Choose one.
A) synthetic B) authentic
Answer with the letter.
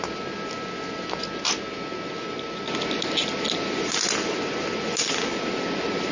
B